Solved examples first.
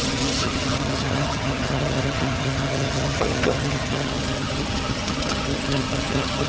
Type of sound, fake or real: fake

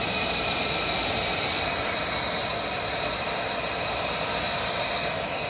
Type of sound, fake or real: real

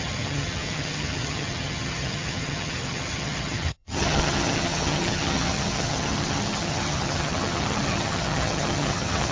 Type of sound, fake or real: fake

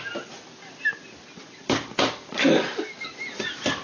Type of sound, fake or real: real